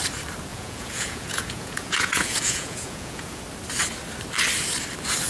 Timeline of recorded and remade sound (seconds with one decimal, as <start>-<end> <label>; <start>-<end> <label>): 0.0-0.5 recorded; 0.5-3.4 remade; 3.4-5.3 recorded